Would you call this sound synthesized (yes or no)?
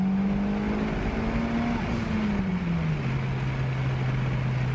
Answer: no